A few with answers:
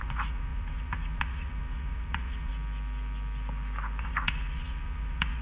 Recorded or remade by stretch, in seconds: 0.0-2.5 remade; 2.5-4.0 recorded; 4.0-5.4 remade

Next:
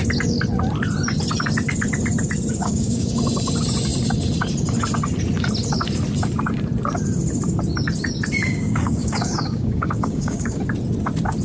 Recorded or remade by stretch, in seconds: 0.0-2.6 recorded; 2.6-3.1 remade; 3.1-8.4 recorded; 8.4-10.6 remade; 10.6-11.4 recorded

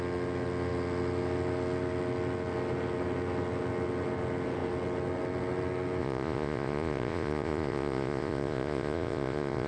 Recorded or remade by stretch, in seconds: 0.0-6.0 recorded; 6.0-9.7 remade

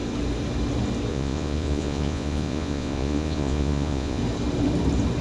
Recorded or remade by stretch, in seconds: 0.0-1.1 recorded; 1.1-4.2 remade; 4.2-5.2 recorded